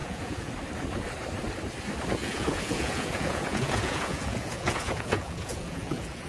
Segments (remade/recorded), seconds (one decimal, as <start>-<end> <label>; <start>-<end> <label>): 0.0-0.5 remade; 0.5-2.2 recorded; 2.2-6.3 remade